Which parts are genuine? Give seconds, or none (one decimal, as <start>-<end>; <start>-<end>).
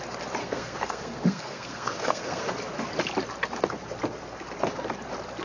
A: 0.0-0.4; 2.5-5.4